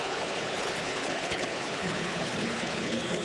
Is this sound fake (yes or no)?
yes